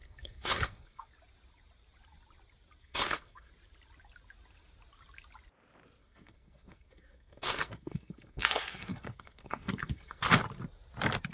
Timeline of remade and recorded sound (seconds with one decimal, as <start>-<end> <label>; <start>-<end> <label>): 0.0-1.1 remade; 1.1-2.8 recorded; 2.8-3.5 remade; 3.5-6.0 recorded; 6.0-10.2 remade; 10.2-11.3 recorded